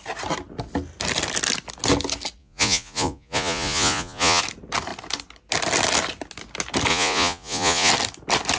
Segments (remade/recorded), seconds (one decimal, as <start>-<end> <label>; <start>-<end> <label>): 0.0-2.4 recorded; 2.4-4.4 remade; 4.4-6.9 recorded; 6.9-7.9 remade; 7.9-8.6 recorded